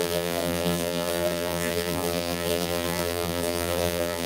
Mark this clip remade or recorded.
remade